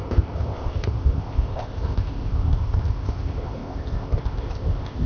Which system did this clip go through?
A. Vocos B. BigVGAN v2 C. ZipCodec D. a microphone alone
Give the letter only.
C